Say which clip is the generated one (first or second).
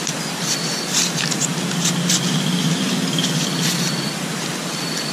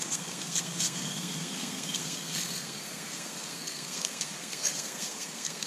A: second